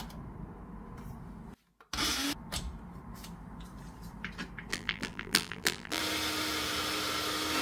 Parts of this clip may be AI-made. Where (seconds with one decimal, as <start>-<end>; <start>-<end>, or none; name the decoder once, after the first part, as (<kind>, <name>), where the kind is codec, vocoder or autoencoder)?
4.7-6.0 (vocoder, BigVGAN v2)